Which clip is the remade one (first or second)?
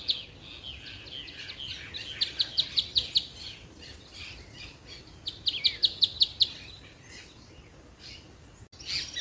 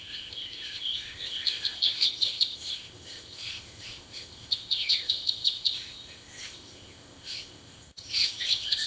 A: second